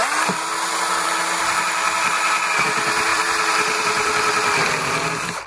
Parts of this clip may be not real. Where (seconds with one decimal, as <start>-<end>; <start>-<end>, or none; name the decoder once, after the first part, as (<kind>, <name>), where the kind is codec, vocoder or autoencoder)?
0.0-1.8 (vocoder, BigVGAN v2); 3.1-5.1